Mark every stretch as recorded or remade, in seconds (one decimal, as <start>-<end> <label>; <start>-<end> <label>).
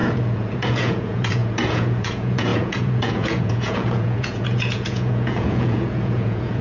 0.0-6.6 remade